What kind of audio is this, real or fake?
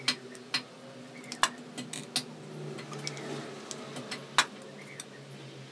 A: real